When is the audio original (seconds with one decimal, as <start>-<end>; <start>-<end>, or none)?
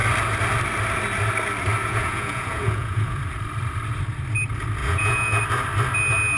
0.0-1.8; 3.2-4.8; 5.4-6.4